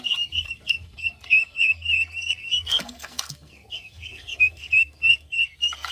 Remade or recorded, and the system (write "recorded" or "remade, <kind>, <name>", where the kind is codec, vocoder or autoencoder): remade, codec, SNAC